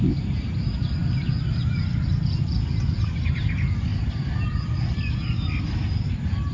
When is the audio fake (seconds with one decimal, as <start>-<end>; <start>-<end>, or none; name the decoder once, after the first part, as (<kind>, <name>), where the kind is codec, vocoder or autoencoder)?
none